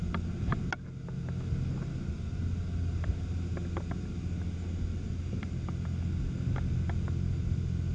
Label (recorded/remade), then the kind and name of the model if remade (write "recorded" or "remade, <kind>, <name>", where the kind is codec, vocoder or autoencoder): recorded